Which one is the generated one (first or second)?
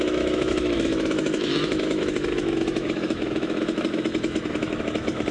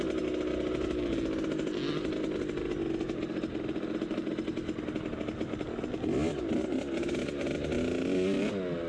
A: first